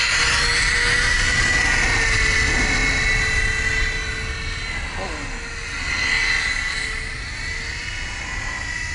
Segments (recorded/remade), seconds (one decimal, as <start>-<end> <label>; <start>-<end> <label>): 0.0-8.9 recorded